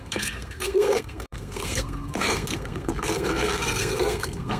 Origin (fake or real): fake